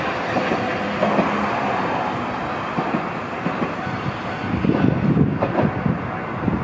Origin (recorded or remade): recorded